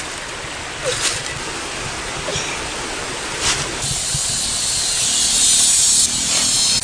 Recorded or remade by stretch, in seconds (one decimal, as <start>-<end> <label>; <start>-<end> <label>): 0.0-6.8 recorded

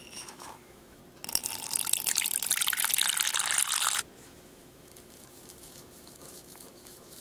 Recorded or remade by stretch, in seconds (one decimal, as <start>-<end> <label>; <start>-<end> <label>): 0.0-1.0 remade; 1.0-4.2 recorded; 4.2-7.2 remade

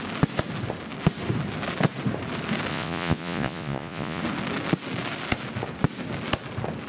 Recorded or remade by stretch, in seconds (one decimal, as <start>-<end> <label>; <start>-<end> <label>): 0.0-2.7 recorded; 2.7-4.2 remade; 4.2-6.9 recorded

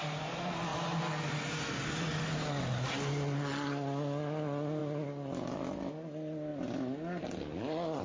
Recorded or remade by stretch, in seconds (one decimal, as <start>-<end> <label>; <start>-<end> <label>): 0.0-8.0 recorded